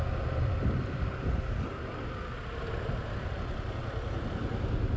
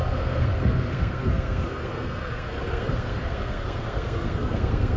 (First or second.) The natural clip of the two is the first